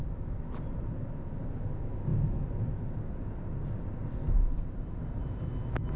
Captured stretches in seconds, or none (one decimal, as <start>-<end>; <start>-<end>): 0.0-6.0